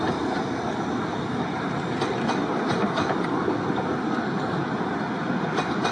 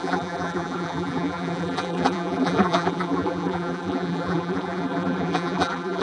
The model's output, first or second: second